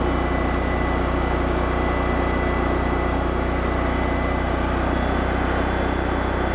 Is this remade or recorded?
recorded